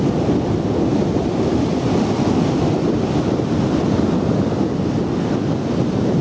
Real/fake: real